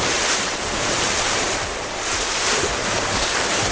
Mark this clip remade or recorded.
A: remade